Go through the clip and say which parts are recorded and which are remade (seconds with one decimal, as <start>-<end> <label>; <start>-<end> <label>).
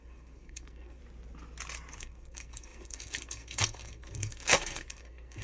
0.0-1.0 remade; 1.0-2.0 recorded; 2.0-5.4 remade